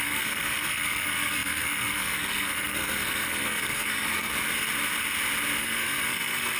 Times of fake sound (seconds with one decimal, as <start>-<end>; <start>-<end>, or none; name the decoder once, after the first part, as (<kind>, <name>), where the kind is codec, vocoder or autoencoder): 0.0-4.3 (codec, SNAC); 5.6-6.6